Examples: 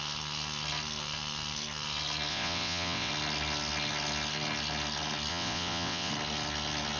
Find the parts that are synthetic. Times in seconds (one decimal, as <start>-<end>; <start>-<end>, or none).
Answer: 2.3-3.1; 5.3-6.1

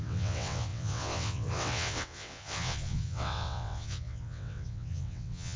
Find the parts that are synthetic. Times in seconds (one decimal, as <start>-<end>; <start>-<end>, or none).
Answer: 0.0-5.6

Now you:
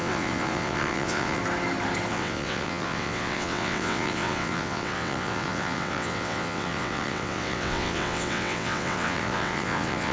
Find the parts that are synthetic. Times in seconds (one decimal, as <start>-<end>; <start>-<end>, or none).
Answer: 0.0-1.4; 2.1-10.1

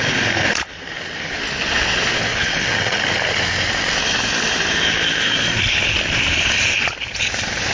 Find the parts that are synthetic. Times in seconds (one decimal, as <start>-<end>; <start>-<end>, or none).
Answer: 2.3-3.0

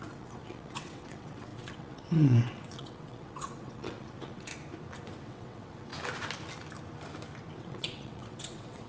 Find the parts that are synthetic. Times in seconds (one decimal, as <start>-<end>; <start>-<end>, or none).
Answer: 0.0-4.5; 5.2-5.9; 7.6-8.9